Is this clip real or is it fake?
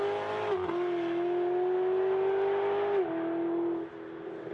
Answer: real